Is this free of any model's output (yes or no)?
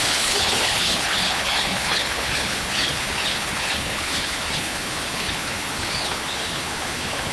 no